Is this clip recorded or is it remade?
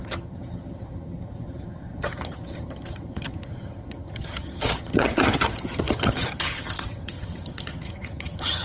remade